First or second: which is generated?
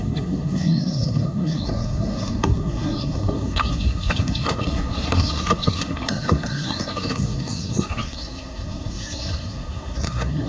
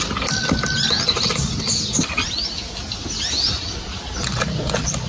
first